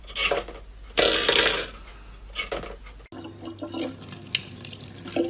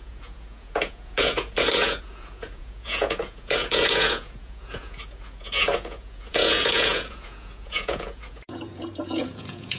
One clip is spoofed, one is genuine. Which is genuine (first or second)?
first